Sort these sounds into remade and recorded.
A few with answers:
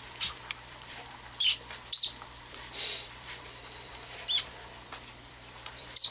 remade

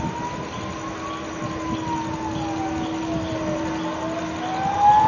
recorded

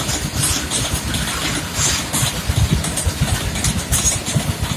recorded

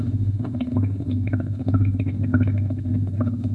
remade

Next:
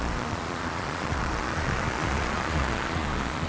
remade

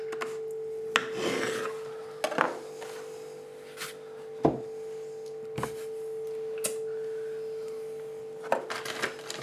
recorded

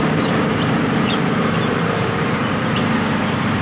remade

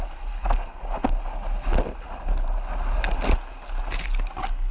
recorded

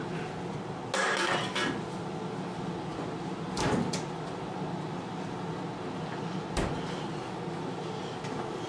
recorded